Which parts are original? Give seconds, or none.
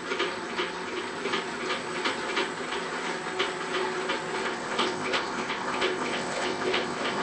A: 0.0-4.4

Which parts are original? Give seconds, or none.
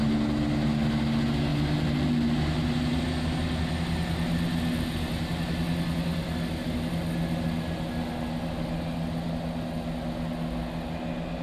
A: 0.0-1.5; 3.0-11.4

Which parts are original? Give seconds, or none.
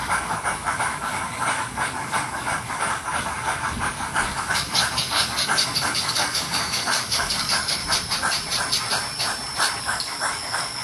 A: 7.8-9.8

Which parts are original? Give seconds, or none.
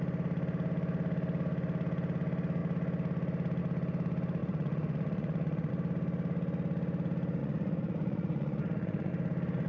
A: 0.0-4.4; 5.7-7.4; 9.1-9.7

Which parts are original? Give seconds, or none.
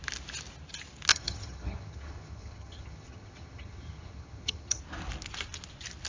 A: 0.0-1.1; 4.8-6.1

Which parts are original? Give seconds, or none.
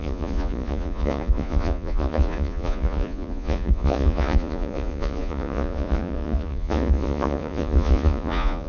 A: none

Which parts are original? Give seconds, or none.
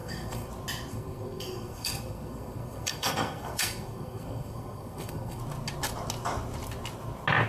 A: 0.5-0.9; 5.4-7.5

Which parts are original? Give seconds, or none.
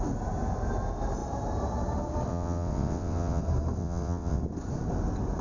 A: 0.0-2.3; 3.4-3.8; 4.4-5.4